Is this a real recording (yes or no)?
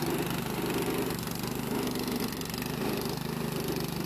yes